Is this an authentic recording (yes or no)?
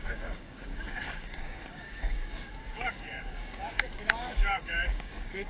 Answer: no